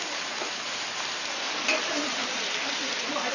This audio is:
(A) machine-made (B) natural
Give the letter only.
A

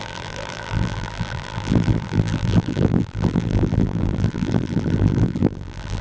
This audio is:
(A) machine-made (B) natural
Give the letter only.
A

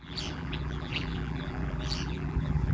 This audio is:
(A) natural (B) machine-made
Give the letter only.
B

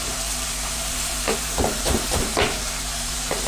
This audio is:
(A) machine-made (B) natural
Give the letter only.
A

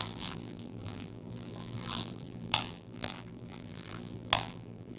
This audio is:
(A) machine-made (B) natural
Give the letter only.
A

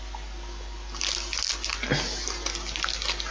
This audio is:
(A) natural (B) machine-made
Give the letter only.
A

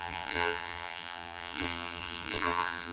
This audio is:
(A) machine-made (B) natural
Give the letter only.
A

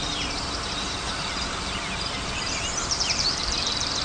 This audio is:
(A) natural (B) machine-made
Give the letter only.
B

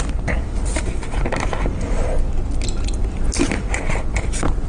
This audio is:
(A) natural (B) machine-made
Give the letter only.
A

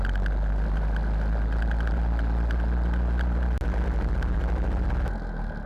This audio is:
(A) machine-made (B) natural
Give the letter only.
B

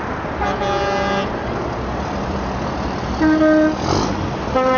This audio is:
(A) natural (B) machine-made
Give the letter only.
A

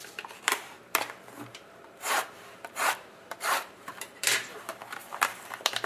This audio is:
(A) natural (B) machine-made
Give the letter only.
B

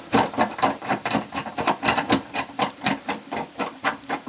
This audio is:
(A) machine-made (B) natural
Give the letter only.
A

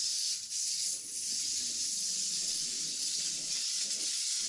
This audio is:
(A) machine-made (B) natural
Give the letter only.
A